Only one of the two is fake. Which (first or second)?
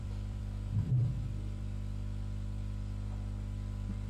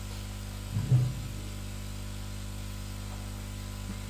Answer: first